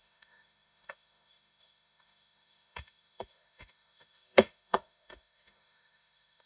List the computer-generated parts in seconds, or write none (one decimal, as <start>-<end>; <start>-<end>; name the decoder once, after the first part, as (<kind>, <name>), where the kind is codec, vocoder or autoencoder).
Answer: 0.0-6.5 (autoencoder, DAC-VAE)